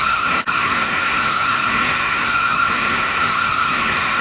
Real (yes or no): no